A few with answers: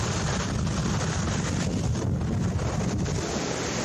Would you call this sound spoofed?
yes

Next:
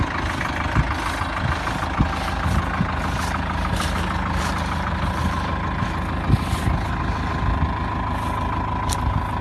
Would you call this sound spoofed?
no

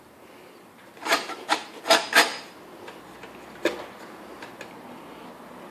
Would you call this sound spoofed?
no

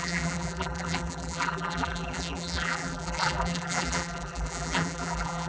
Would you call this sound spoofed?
yes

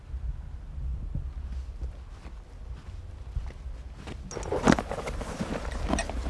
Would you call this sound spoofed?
no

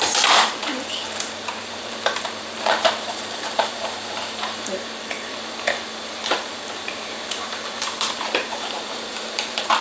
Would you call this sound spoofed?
yes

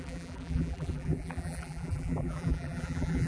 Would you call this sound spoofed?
yes